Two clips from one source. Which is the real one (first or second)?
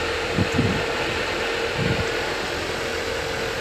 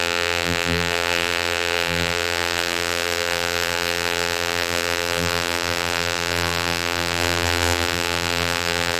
first